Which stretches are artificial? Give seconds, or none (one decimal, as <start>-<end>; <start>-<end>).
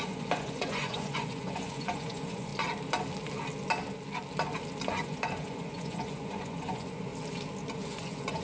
0.0-2.5; 4.9-7.1; 7.7-8.4